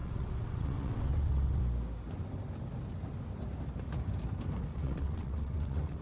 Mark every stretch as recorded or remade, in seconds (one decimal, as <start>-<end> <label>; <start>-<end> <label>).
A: 0.0-1.6 remade; 1.6-4.7 recorded; 4.7-6.0 remade